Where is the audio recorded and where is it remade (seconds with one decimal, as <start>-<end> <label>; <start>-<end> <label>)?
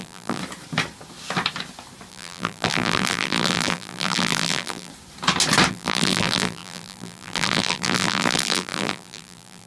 0.0-0.4 remade; 0.4-2.1 recorded; 2.1-4.9 remade; 4.9-5.7 recorded; 5.7-9.7 remade